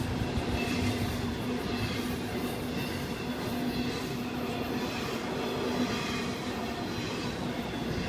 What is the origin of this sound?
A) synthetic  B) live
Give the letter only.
B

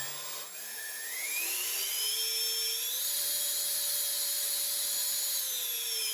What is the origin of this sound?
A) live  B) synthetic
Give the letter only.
A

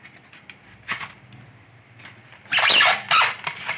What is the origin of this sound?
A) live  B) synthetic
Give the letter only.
B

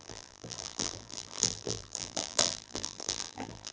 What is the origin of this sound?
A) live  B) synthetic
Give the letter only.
B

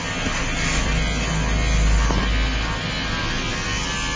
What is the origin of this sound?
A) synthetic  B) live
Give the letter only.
B